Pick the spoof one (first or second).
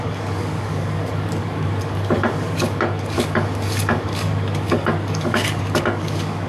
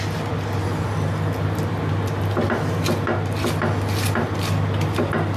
first